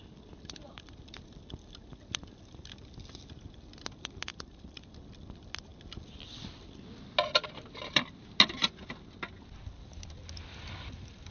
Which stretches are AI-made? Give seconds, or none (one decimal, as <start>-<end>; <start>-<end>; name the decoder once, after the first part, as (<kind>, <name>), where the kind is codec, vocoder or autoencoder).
4.3-5.0 (vocoder, BigVGAN v2)